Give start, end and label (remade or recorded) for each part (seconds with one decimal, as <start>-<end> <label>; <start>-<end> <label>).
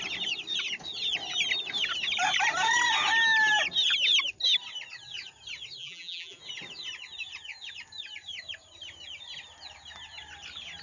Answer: 0.0-5.8 recorded; 5.8-6.4 remade; 6.4-10.8 recorded